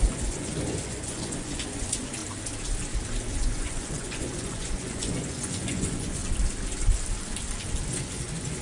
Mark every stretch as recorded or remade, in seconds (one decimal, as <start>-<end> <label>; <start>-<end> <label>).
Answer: 0.0-2.2 remade; 2.2-3.3 recorded; 3.3-6.2 remade; 6.2-7.9 recorded; 7.9-8.6 remade